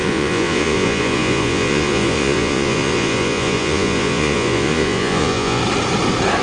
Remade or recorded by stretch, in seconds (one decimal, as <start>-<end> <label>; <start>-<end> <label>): 0.0-5.6 remade; 5.6-6.4 recorded